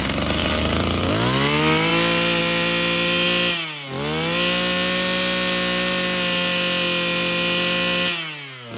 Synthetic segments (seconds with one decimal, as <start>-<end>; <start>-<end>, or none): 0.4-1.1